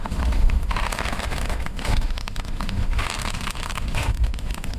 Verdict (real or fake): fake